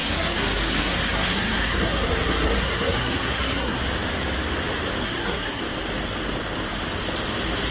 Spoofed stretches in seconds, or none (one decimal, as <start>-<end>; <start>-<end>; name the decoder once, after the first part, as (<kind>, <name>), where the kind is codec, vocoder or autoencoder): 0.0-3.8 (codec, SNAC); 5.0-5.6

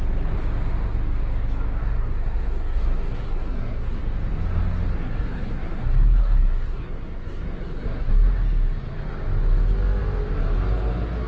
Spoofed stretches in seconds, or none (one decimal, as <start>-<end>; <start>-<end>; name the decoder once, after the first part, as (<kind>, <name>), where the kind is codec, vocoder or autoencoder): 1.8-4.0 (codec, SNAC); 4.9-8.1

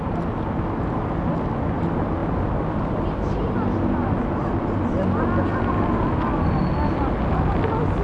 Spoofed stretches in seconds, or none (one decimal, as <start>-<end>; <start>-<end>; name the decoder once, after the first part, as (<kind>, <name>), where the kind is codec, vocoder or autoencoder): none

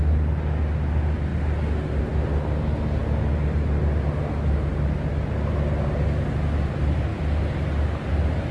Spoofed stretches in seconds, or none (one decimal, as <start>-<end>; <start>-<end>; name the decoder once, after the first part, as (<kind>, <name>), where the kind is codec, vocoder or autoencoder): none

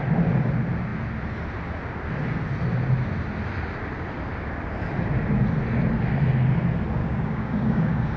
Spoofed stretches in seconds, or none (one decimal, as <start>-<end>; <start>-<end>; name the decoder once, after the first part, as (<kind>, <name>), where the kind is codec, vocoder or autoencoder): 7.0-8.2 (codec, DAC)

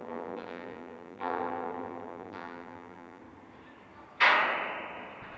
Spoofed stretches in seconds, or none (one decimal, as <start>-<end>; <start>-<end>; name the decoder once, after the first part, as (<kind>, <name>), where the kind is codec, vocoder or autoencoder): 0.0-3.2 (vocoder, BigVGAN v2)